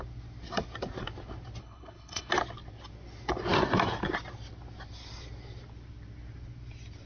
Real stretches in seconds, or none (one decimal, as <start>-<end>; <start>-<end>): 0.0-1.6; 2.3-7.1